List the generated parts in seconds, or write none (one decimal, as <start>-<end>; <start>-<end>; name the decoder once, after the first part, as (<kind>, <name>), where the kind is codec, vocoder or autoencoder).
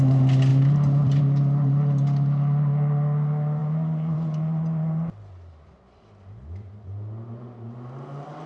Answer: 0.5-1.2 (vocoder, BigVGAN v2)